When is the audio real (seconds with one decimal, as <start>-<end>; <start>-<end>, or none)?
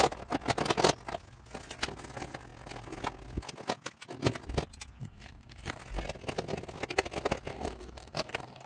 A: 0.0-5.0; 5.8-7.5